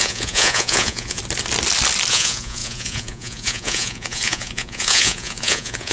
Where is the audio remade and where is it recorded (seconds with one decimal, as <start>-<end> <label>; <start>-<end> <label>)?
0.0-1.2 remade; 1.2-2.1 recorded; 2.1-5.9 remade

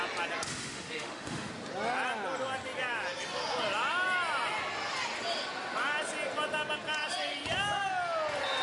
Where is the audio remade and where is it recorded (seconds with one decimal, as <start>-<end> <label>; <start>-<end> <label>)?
0.0-0.5 recorded; 0.5-1.5 remade; 1.5-8.6 recorded

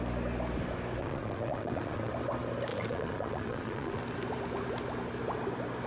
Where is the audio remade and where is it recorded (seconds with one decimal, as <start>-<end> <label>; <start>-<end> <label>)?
0.0-1.0 recorded; 1.0-2.1 remade; 2.1-2.7 recorded; 2.7-4.0 remade; 4.0-5.9 recorded

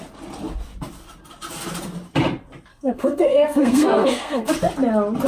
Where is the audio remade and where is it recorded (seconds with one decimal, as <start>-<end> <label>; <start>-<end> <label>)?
0.0-2.7 recorded; 2.7-4.5 remade; 4.5-5.3 recorded

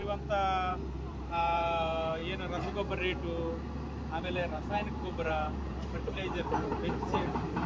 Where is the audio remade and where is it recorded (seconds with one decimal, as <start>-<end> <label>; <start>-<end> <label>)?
0.0-0.7 recorded; 0.7-2.2 remade; 2.2-4.2 recorded; 4.2-7.7 remade

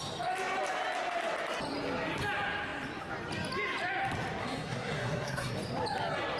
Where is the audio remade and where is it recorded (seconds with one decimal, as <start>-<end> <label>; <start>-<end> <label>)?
0.0-4.4 recorded; 4.4-5.5 remade; 5.5-6.4 recorded

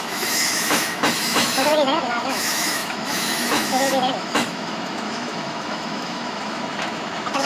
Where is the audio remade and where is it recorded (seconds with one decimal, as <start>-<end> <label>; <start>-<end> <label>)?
0.0-7.5 remade